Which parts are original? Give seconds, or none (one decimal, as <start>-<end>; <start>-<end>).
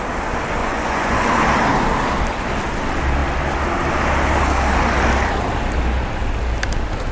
0.0-0.6; 1.3-7.1